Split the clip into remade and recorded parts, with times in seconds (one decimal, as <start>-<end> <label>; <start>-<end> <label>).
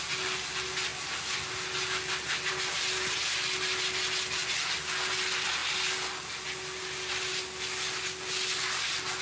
0.0-9.2 recorded